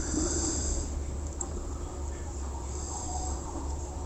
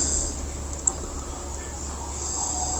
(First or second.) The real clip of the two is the second